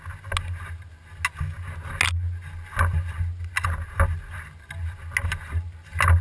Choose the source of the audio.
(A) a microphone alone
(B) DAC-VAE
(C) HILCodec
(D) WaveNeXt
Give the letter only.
A